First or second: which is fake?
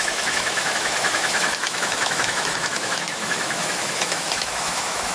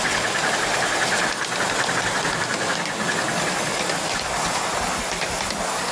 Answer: first